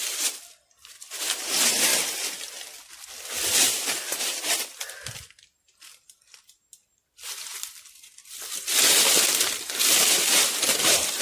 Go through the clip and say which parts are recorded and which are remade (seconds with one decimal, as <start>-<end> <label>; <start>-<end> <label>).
0.0-1.9 remade; 1.9-4.2 recorded; 4.2-11.2 remade